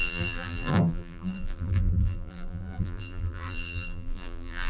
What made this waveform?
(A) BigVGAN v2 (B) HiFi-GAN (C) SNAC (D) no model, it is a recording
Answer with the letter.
A